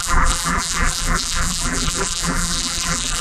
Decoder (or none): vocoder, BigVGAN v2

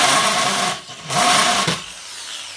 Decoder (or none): none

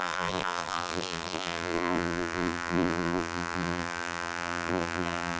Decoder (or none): vocoder, BigVGAN v2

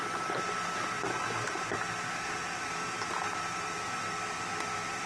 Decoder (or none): vocoder, BigVGAN v2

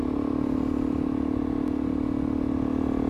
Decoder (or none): none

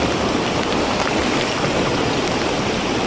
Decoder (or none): vocoder, BigVGAN v2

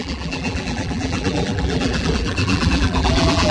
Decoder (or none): vocoder, BigVGAN v2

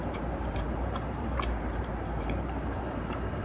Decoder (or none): vocoder, BigVGAN v2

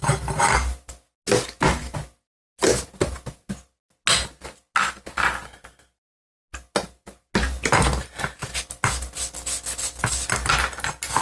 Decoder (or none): none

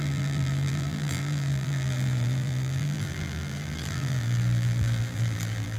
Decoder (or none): vocoder, BigVGAN v2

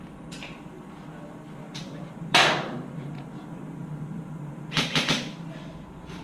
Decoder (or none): vocoder, BigVGAN v2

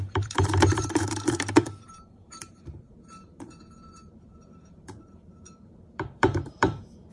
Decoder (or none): vocoder, BigVGAN v2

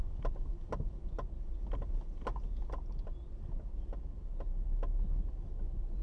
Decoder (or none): none